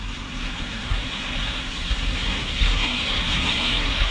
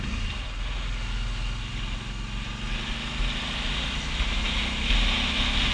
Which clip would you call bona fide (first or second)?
second